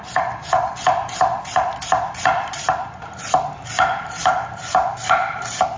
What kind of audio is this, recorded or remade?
remade